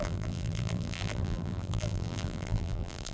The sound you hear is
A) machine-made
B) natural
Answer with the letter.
A